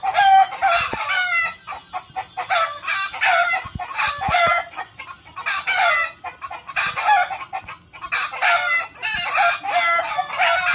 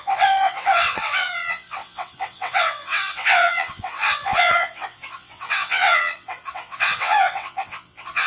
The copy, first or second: second